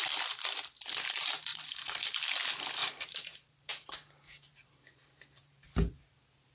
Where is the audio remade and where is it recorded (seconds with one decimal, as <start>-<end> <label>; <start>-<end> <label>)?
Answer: 0.0-1.5 recorded; 1.5-2.1 remade; 2.1-2.8 recorded; 2.8-5.9 remade; 5.9-6.5 recorded

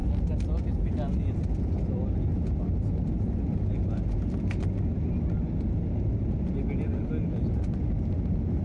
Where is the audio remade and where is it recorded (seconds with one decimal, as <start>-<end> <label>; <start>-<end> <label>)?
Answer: 0.0-8.6 recorded